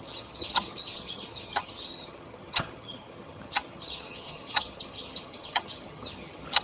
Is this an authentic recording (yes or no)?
no